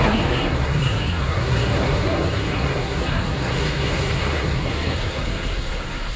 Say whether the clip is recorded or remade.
remade